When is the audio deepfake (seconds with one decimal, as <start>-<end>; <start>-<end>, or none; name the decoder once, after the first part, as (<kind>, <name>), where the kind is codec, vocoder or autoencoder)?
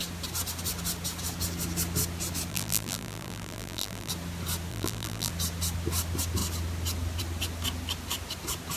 2.5-4.1 (vocoder, BigVGAN v2); 4.7-5.3